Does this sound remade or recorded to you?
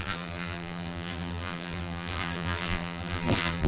remade